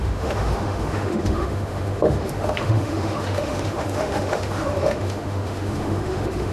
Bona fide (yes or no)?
no